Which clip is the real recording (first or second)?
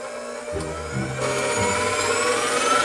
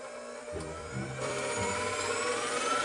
first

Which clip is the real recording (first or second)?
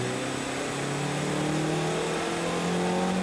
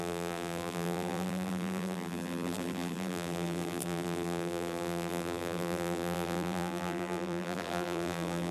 first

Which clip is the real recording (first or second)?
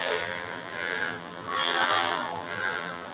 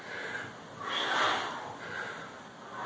second